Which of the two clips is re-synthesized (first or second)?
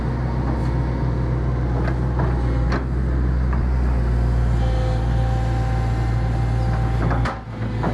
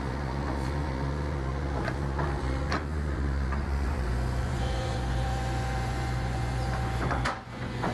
second